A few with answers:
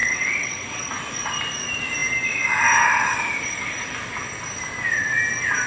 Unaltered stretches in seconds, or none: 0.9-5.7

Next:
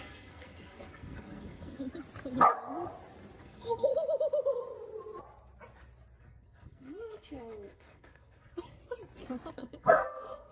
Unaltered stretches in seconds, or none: 1.8-3.4; 3.9-6.2; 8.8-9.5